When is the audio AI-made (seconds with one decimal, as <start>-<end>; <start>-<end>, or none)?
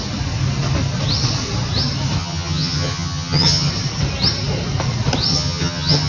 2.2-3.7; 5.3-6.1